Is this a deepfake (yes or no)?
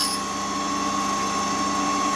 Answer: no